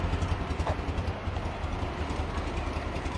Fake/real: real